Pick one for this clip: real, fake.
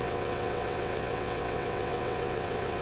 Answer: fake